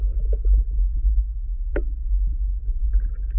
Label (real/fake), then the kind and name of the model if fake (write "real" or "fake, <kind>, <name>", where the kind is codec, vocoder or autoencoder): real